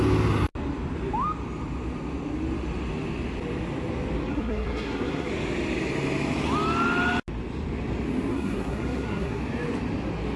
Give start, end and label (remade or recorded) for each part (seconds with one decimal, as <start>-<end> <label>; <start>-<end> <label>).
0.0-4.3 recorded; 4.3-5.3 remade; 5.3-8.3 recorded; 8.3-9.4 remade; 9.4-10.4 recorded